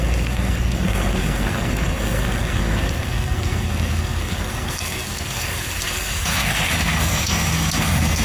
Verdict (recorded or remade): remade